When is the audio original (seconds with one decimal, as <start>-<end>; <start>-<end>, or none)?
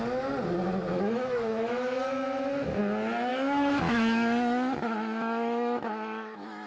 0.0-0.9; 2.8-3.3